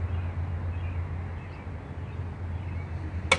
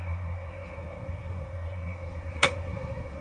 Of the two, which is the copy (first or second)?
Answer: second